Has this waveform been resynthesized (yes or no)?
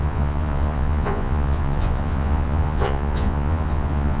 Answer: yes